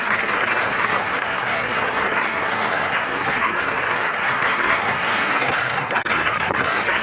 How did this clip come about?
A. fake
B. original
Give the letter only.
A